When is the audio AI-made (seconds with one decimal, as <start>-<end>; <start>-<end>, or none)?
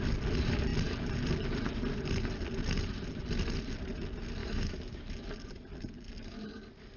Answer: 4.4-5.0